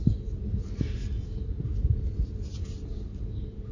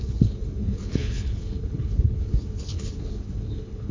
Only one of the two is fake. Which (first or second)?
second